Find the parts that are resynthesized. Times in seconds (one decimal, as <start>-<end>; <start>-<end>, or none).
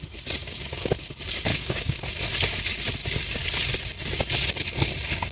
0.4-0.9; 1.5-2.0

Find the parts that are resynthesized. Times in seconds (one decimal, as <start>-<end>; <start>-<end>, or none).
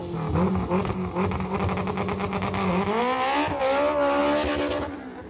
none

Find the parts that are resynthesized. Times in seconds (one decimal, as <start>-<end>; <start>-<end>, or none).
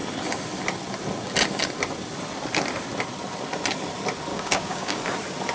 4.3-5.0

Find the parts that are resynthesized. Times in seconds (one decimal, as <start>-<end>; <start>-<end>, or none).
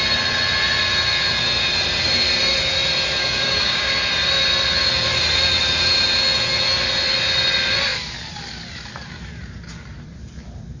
3.2-3.9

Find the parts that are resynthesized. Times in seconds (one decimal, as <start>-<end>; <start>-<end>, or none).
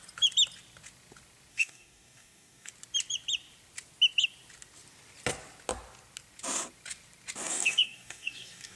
1.5-2.7; 7.5-8.8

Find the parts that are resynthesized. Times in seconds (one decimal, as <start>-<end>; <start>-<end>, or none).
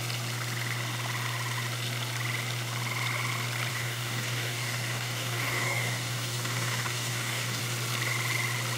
3.7-7.6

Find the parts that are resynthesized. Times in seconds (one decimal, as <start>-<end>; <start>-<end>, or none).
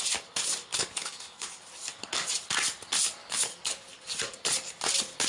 0.7-1.6; 3.2-3.9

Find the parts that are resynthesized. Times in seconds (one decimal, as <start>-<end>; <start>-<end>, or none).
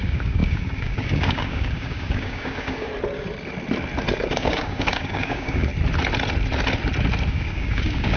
0.0-2.9; 4.2-5.7; 7.3-8.2